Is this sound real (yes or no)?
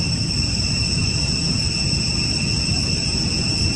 yes